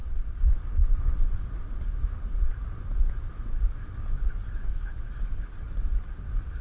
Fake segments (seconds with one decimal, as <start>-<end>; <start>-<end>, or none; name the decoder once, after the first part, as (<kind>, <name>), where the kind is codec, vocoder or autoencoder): none